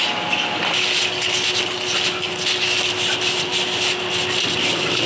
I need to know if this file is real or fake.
real